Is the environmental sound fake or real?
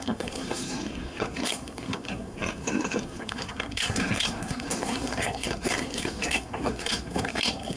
fake